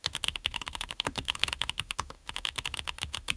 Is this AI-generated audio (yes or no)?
yes